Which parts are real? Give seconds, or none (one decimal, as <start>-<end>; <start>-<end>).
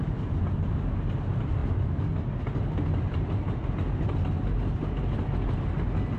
0.0-6.2